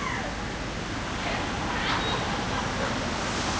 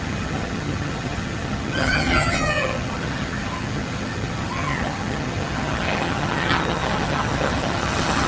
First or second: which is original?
first